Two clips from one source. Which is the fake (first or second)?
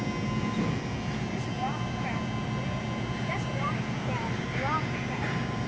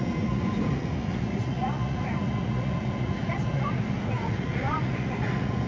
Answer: second